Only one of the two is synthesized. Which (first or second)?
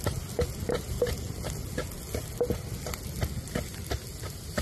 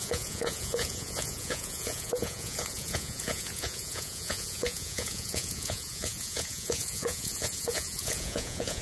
second